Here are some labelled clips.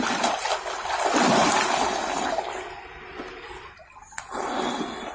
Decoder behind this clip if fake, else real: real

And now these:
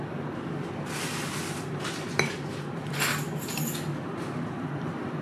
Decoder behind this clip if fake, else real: real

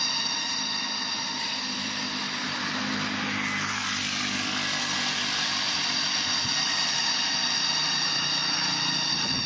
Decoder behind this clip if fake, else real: real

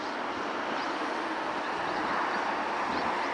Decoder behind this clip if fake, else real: real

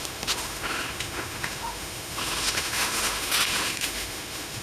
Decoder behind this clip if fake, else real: fake, autoencoder, DAC-VAE